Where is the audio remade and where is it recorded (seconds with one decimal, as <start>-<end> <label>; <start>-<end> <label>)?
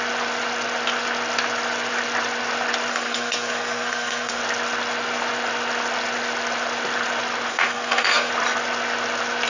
0.0-2.9 recorded; 2.9-4.4 remade; 4.4-7.5 recorded; 7.5-8.3 remade; 8.3-9.5 recorded